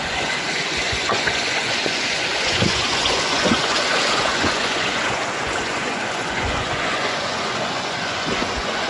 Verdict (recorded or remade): remade